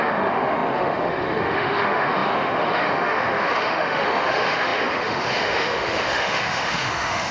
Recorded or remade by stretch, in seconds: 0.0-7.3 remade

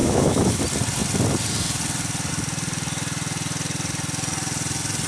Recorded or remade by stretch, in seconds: 0.0-0.6 remade; 0.6-5.1 recorded

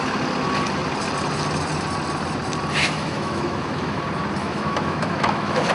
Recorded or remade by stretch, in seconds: 0.0-2.8 recorded; 2.8-4.0 remade; 4.0-4.4 recorded; 4.4-5.7 remade

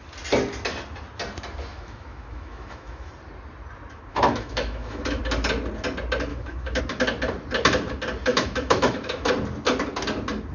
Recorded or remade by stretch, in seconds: 0.0-1.7 recorded; 1.7-3.1 remade; 3.1-4.1 recorded; 4.1-5.2 remade; 5.2-6.3 recorded; 6.3-6.8 remade; 6.8-8.3 recorded; 8.3-9.3 remade; 9.3-10.5 recorded